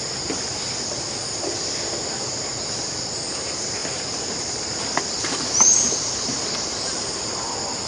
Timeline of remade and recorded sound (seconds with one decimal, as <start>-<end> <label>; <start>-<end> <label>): 0.0-0.5 recorded; 0.5-1.5 remade; 1.5-3.8 recorded; 3.8-7.2 remade; 7.2-7.9 recorded